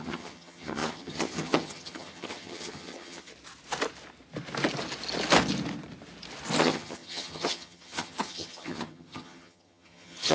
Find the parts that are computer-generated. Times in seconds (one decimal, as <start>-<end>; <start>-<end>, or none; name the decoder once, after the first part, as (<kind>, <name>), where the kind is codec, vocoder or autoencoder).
0.0-3.3 (vocoder, HiFi-GAN); 6.6-10.3